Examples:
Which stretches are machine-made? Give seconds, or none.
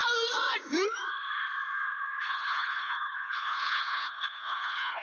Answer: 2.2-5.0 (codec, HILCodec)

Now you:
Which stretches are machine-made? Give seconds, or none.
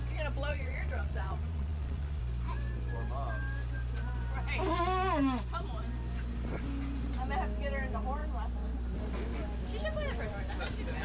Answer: 0.5-2.2 (vocoder, Vocos)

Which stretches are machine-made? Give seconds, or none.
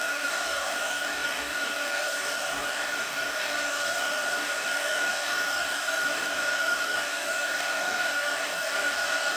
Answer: 0.0-9.4 (codec, DAC)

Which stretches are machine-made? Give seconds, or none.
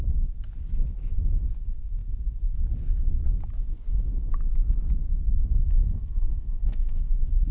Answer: 5.6-7.0 (codec, SNAC)